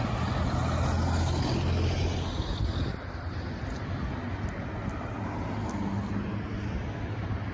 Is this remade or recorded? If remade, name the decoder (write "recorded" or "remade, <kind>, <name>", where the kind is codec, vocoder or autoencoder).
recorded